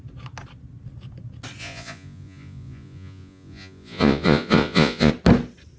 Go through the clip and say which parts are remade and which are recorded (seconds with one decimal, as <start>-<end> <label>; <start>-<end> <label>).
0.0-1.6 recorded; 1.6-5.1 remade; 5.1-5.8 recorded

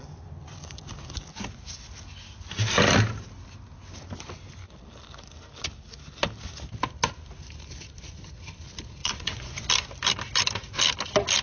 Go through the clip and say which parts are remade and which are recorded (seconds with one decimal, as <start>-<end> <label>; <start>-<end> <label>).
0.0-9.0 recorded; 9.0-9.7 remade; 9.7-11.4 recorded

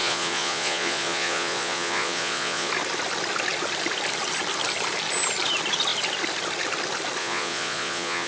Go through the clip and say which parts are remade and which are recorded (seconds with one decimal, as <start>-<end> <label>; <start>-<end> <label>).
0.0-2.7 remade; 2.7-7.2 recorded; 7.2-8.3 remade

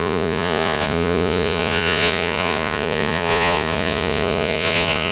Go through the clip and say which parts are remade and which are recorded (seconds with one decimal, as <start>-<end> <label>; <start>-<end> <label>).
0.0-5.1 remade

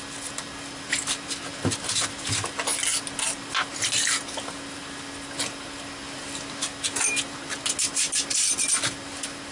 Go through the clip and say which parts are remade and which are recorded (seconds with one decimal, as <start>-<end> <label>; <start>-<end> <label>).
0.0-9.5 recorded

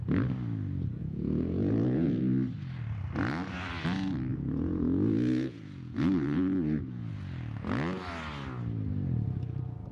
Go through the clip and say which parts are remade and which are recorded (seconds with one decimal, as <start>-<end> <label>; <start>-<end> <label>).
0.0-1.0 recorded; 1.0-2.2 remade; 2.2-4.3 recorded; 4.3-7.1 remade; 7.1-9.9 recorded

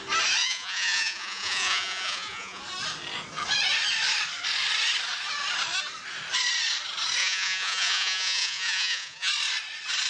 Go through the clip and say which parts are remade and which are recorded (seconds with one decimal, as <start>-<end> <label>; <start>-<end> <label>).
0.0-0.4 recorded; 0.4-2.6 remade; 2.6-7.2 recorded; 7.2-9.3 remade; 9.3-10.1 recorded

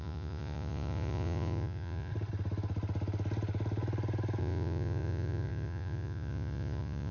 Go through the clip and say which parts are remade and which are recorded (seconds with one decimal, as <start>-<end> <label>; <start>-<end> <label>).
0.0-2.1 remade; 2.1-4.4 recorded; 4.4-7.1 remade